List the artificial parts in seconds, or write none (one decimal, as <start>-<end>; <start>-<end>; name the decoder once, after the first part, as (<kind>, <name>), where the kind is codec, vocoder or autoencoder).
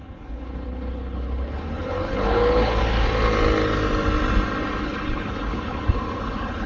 0.0-2.8 (codec, HILCodec); 4.8-6.7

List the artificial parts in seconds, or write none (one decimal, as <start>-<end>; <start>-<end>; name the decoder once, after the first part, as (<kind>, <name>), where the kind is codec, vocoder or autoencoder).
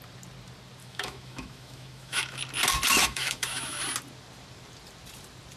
0.8-2.4 (autoencoder, DAC-VAE); 3.0-3.8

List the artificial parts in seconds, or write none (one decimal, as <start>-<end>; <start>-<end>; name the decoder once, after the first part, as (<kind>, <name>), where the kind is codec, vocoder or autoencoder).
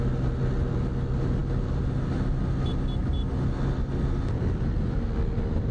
none